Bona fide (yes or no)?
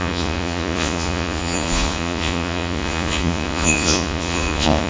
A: no